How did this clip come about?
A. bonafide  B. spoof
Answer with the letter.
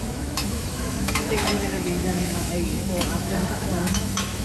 B